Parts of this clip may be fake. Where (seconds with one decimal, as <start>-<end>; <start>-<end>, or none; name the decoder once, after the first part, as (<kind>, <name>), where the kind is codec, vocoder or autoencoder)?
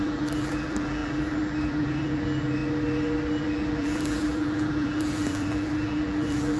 0.0-2.6 (vocoder, BigVGAN v2); 3.4-6.6